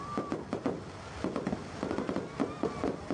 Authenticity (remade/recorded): recorded